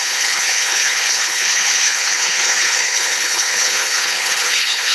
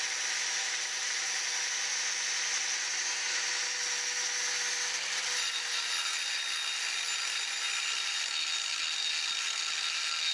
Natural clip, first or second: second